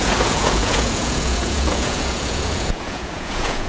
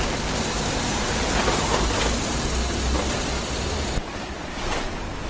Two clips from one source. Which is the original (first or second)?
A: second